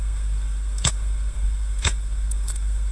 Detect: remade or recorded remade